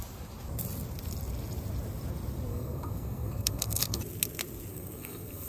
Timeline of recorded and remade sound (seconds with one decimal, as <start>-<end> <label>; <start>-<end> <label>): 0.0-2.5 recorded; 2.5-4.0 remade; 4.0-4.7 recorded; 4.7-5.5 remade